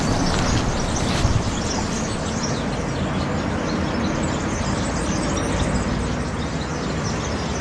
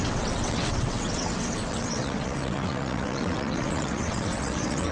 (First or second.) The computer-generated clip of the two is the second